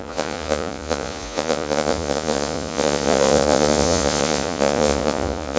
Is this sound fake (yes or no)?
yes